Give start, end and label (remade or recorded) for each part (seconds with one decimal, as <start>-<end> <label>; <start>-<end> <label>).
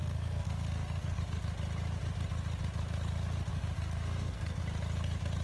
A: 0.0-1.2 remade; 1.2-3.5 recorded; 3.5-4.6 remade; 4.6-5.4 recorded